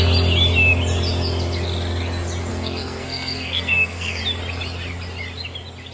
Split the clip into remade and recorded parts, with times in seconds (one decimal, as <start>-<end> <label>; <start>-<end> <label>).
0.0-2.5 recorded; 2.5-4.2 remade; 4.2-5.9 recorded